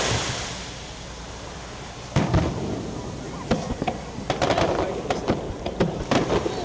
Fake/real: real